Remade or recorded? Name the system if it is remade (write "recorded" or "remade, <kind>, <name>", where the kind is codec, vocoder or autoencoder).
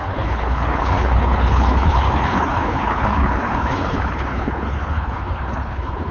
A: remade, codec, HILCodec